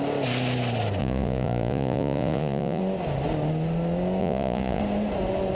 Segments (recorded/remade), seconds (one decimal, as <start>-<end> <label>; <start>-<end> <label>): 0.0-1.0 recorded; 1.0-2.8 remade; 2.8-4.2 recorded; 4.2-4.8 remade; 4.8-5.5 recorded